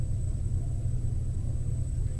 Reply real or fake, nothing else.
real